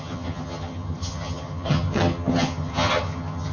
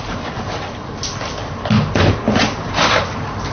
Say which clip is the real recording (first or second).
second